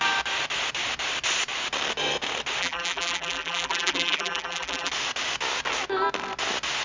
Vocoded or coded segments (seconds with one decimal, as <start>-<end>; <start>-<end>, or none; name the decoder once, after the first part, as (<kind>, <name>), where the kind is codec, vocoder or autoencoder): 2.6-4.9 (vocoder, BigVGAN v2)